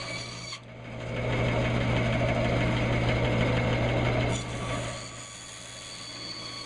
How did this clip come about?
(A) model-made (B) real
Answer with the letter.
B